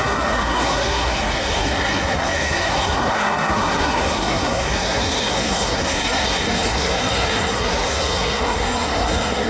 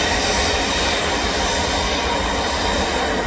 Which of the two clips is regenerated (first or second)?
first